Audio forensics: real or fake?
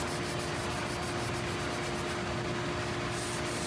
real